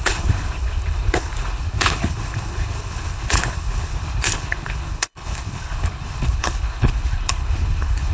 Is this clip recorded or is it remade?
remade